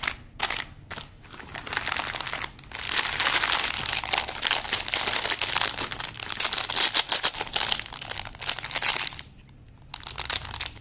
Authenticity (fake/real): real